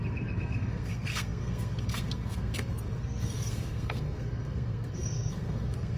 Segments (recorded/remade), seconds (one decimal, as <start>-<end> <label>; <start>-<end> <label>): 0.0-6.0 remade